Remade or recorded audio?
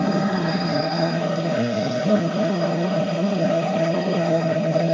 remade